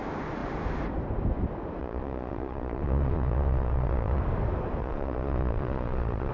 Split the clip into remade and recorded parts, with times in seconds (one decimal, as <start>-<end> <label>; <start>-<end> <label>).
0.0-1.8 recorded; 1.8-4.2 remade; 4.2-4.8 recorded; 4.8-6.3 remade